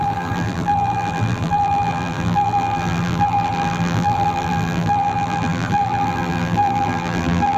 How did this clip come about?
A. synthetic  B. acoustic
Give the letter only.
A